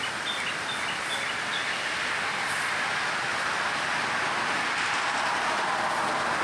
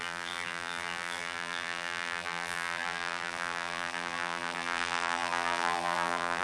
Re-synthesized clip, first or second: second